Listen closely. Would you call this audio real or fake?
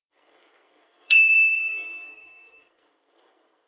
fake